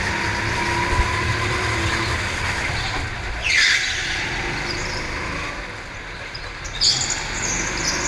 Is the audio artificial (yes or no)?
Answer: no